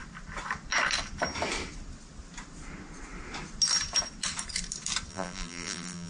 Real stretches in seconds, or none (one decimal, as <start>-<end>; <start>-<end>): 0.0-5.1